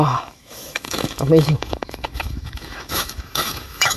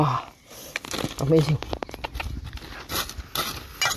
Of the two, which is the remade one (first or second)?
first